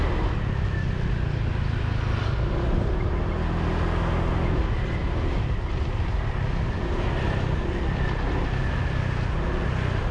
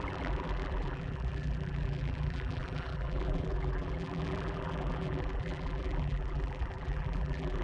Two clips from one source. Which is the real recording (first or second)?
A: first